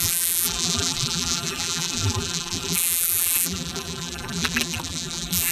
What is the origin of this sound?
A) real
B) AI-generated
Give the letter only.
B